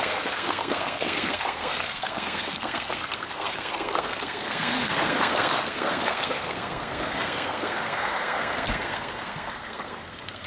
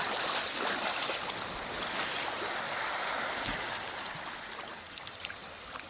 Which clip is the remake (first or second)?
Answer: first